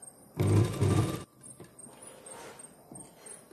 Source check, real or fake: real